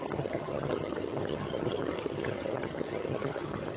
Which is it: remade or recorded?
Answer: remade